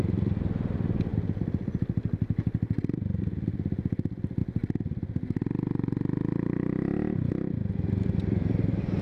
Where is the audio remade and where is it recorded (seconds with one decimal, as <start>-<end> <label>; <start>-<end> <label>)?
0.0-1.1 recorded; 1.1-3.2 remade; 3.2-9.0 recorded